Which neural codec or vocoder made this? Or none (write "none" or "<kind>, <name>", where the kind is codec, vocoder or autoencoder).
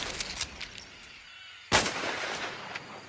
none